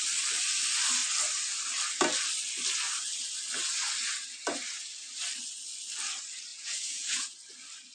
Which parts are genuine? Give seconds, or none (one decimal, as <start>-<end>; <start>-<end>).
0.0-6.5; 7.3-7.9

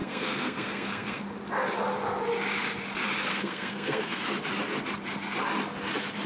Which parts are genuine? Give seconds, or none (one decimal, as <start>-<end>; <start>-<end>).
1.2-3.3; 4.2-6.3

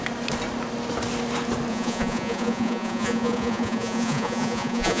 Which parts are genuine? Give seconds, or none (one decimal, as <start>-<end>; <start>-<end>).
0.0-1.7

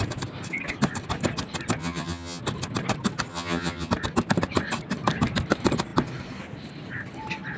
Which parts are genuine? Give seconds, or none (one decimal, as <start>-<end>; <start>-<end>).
0.0-1.8; 2.4-3.3; 3.9-7.6

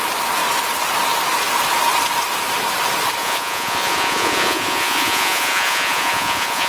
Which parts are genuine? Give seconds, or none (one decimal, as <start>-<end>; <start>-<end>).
0.0-3.2

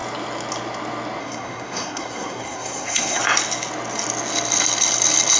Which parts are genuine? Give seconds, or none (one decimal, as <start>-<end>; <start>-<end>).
0.0-1.2; 3.2-5.4

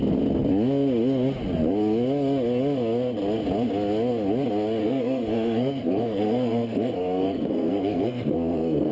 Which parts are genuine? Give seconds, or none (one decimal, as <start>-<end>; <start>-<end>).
0.0-4.8